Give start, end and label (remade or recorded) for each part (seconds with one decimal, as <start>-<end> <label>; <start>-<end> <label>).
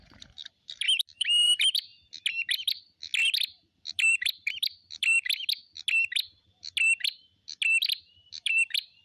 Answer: 0.0-1.9 remade; 1.9-2.5 recorded; 2.5-3.0 remade; 3.0-3.8 recorded; 3.8-5.4 remade; 5.4-8.3 recorded; 8.3-9.0 remade